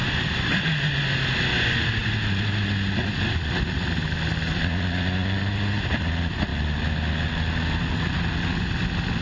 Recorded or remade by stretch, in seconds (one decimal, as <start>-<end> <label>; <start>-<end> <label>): 0.0-0.6 remade; 0.6-5.2 recorded; 5.2-6.0 remade; 6.0-9.2 recorded